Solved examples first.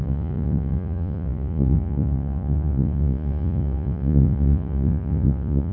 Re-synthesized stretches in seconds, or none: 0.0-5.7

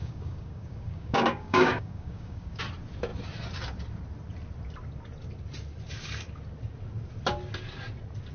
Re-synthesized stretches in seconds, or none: 0.0-2.6

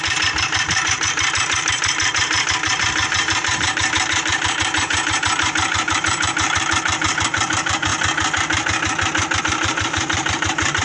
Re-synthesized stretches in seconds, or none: 0.0-7.9; 9.4-10.8

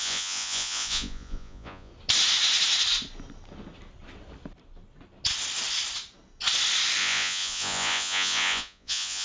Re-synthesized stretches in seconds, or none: 0.0-1.9; 7.0-9.2

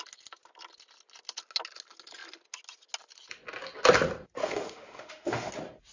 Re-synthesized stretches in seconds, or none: 4.4-5.5

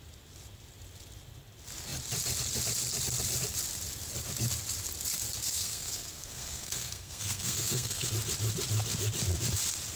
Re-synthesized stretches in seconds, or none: 5.5-8.1

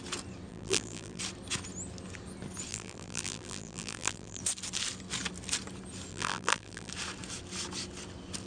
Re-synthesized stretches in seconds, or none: 0.5-1.2; 2.7-4.4; 6.1-6.9

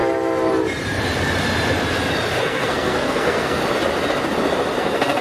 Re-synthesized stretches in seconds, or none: 2.4-3.6; 4.8-5.2